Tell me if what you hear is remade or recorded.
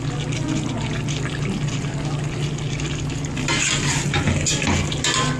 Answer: recorded